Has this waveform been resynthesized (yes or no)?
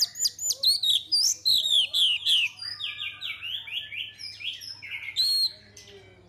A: no